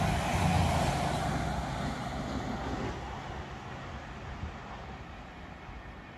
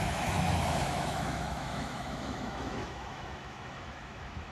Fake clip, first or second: second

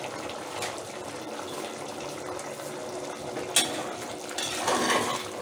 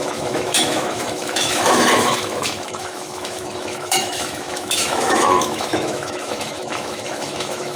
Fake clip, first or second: second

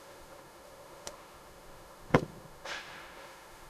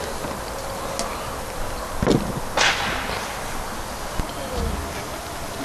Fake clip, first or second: first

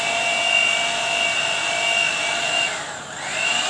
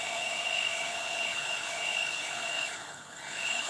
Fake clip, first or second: second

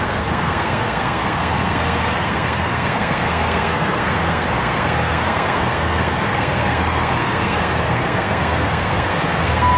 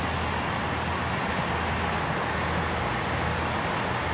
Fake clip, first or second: first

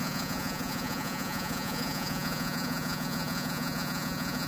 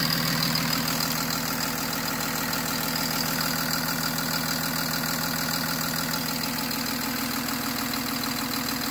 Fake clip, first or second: first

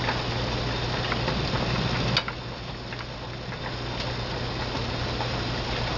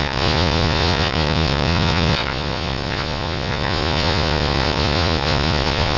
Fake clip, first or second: second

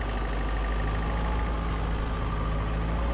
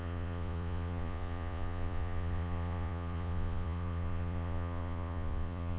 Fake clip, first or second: second